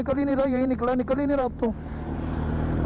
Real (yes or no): no